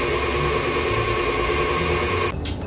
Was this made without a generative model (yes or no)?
yes